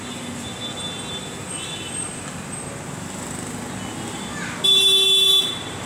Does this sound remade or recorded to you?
recorded